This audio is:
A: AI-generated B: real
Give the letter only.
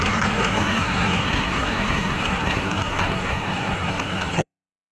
A